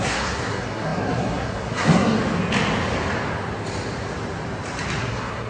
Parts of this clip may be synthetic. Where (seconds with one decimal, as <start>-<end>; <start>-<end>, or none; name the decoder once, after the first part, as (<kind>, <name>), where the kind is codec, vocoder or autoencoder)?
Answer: 0.0-2.2 (codec, SNAC); 5.0-5.5